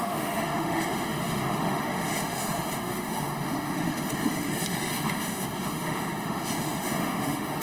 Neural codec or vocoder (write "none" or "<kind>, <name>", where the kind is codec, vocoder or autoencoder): autoencoder, DAC-VAE